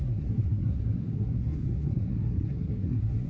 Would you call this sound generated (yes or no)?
yes